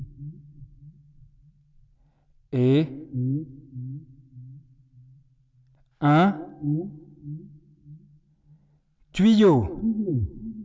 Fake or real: real